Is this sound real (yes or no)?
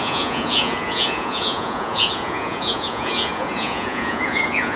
no